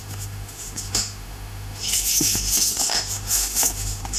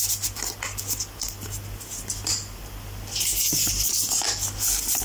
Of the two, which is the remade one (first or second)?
first